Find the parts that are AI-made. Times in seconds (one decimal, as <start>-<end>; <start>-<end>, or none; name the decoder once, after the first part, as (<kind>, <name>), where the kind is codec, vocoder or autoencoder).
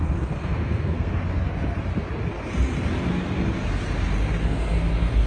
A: 0.0-1.2 (codec, SNAC); 4.4-5.3